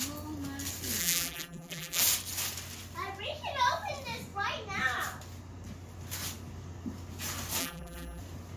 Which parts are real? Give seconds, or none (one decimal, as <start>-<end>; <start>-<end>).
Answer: 0.0-1.0; 2.0-7.6; 8.2-8.6